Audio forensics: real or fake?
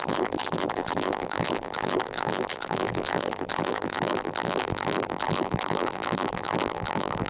fake